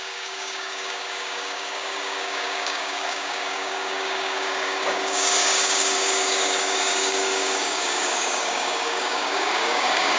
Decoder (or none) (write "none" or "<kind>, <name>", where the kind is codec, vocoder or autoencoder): codec, DAC